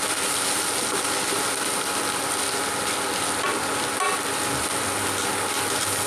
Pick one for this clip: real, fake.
real